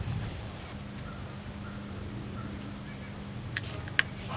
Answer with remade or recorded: recorded